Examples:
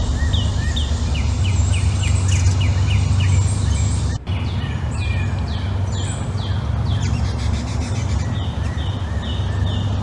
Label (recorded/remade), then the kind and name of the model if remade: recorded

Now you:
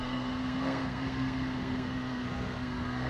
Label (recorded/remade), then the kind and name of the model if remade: remade, codec, SNAC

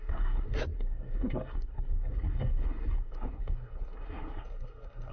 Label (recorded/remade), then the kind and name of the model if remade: remade, codec, SNAC